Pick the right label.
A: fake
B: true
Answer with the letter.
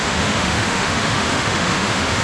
A